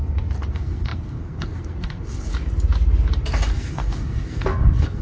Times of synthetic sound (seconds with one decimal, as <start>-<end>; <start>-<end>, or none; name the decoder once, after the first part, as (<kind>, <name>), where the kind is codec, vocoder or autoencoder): 0.5-2.3 (codec, SNAC); 3.5-5.0